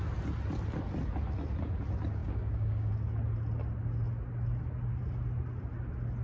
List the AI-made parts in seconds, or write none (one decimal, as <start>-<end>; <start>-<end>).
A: 2.2-2.9